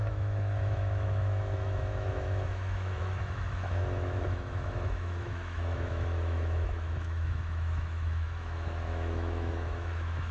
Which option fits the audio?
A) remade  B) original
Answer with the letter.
A